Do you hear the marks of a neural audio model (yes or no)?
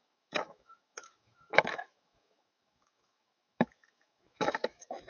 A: yes